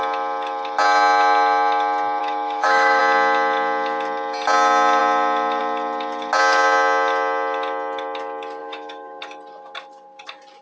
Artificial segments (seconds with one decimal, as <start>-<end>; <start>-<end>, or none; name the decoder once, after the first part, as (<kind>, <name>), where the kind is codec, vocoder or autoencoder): 2.2-3.0 (autoencoder, DAC-VAE); 8.6-9.2